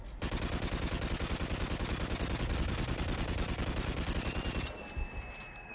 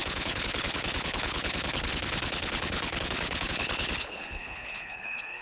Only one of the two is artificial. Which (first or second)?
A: second